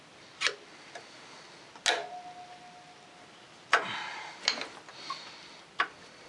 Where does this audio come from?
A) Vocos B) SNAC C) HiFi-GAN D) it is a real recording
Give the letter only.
D